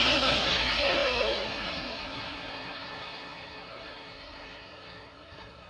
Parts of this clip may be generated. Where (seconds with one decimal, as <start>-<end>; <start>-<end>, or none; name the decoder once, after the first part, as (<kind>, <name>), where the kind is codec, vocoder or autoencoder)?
0.0-5.7 (codec, SNAC)